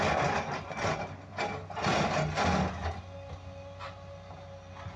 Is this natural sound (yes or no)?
yes